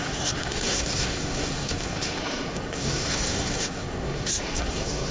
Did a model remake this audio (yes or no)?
yes